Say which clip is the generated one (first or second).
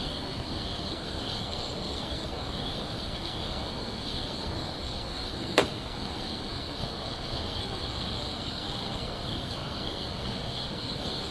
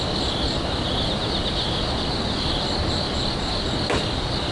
first